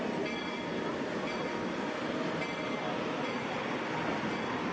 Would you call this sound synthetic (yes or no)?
no